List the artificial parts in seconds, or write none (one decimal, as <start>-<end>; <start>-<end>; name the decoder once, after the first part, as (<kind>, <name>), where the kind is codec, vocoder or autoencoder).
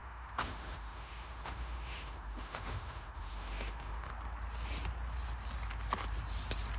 0.0-4.1 (autoencoder, DAC-VAE)